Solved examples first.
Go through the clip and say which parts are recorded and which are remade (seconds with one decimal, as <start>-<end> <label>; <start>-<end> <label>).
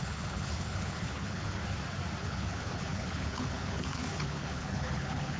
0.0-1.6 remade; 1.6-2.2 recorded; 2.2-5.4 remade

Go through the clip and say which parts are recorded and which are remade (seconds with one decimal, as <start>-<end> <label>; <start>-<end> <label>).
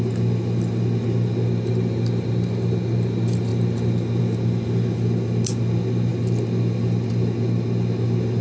0.0-8.4 recorded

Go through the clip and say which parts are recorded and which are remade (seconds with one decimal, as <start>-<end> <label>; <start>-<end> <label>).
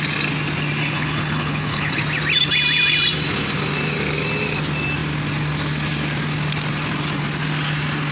0.0-0.8 recorded; 0.8-2.0 remade; 2.0-8.1 recorded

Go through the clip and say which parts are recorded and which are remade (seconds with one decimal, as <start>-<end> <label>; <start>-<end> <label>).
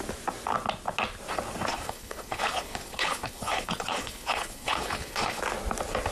0.0-1.7 recorded; 1.7-5.4 remade; 5.4-6.1 recorded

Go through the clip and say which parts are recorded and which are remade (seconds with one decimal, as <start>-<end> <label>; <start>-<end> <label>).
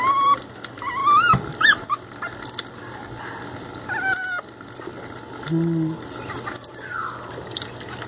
0.0-8.1 recorded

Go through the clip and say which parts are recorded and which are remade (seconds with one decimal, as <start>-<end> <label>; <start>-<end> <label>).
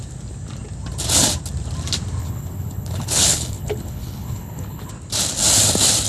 0.0-2.2 recorded; 2.2-4.9 remade; 4.9-6.1 recorded